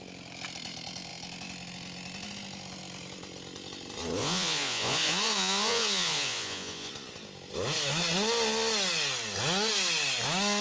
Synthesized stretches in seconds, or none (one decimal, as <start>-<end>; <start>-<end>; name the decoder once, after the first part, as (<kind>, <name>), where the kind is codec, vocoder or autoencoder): 4.2-6.9 (vocoder, Vocos)